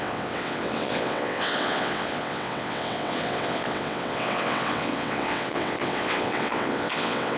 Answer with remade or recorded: remade